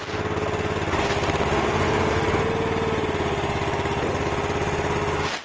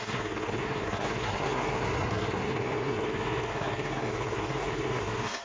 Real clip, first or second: first